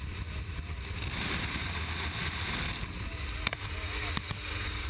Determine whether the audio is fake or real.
real